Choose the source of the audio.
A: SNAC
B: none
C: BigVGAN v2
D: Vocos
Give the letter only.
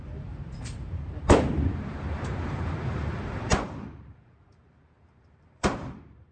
C